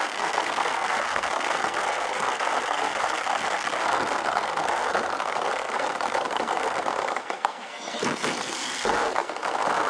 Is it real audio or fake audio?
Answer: fake